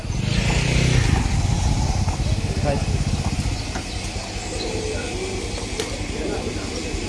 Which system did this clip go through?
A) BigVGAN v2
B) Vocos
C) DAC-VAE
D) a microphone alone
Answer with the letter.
D